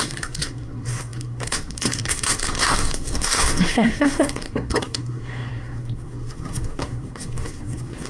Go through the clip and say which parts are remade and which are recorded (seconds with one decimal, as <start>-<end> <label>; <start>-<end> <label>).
0.0-8.1 remade